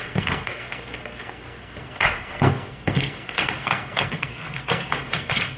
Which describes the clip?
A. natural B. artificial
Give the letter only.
B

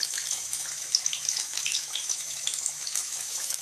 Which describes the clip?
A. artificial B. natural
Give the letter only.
A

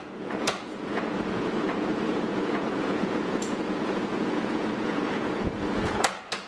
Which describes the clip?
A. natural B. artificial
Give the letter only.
B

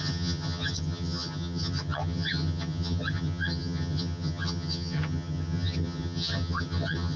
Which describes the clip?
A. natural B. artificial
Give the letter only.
B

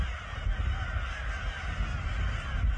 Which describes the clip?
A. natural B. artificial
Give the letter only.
A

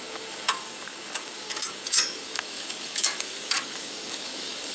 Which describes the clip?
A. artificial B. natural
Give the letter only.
A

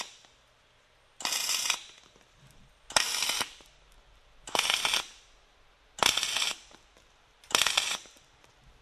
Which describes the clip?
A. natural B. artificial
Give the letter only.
A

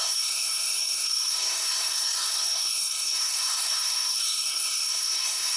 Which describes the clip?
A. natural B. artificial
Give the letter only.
B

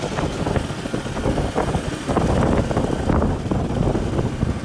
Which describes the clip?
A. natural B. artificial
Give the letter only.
A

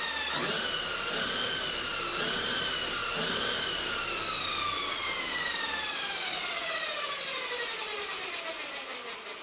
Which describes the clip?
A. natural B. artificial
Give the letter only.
A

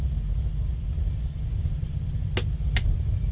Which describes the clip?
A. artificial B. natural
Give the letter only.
B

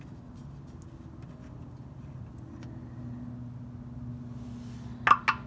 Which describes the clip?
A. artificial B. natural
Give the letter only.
B